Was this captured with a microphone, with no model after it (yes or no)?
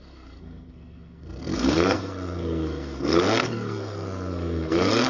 no